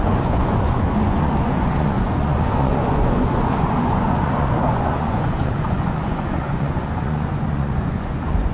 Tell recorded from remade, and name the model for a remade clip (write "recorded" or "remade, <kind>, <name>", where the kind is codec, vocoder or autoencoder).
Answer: remade, vocoder, Vocos